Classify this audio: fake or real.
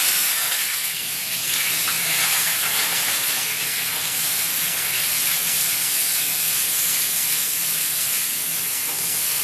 fake